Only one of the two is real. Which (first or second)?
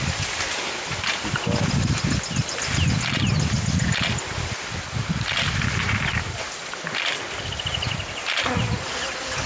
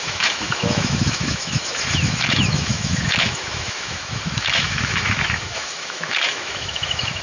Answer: first